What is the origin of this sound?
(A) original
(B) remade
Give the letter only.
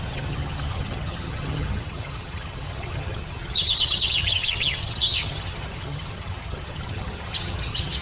B